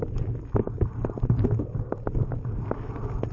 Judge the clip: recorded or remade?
remade